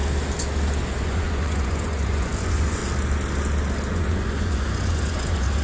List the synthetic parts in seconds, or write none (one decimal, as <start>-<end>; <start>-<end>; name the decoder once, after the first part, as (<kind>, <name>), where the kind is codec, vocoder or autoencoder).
1.0-2.8 (vocoder, Vocos); 3.9-5.6